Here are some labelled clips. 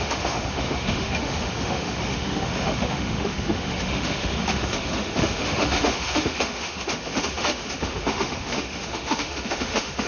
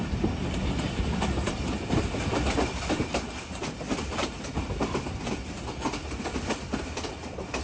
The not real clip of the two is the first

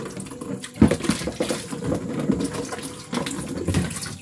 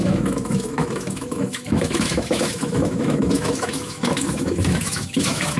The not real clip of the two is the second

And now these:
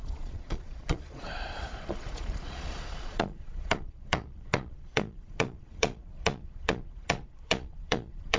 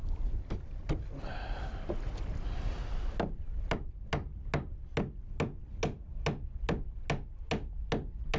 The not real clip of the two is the first